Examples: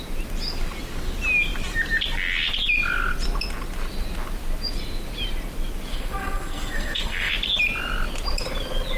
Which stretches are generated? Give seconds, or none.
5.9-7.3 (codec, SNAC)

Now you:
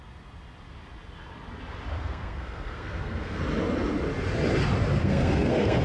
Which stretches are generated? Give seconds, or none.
1.9-3.4 (codec, SNAC); 5.0-5.8

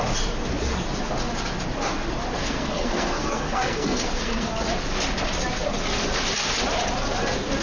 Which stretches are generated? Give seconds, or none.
2.4-4.5 (codec, SNAC)